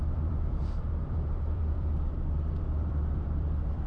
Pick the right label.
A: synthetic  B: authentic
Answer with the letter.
A